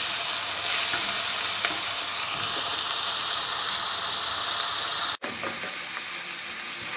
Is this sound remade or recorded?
recorded